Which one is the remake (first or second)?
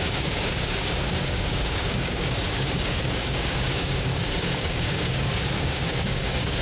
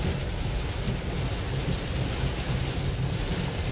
first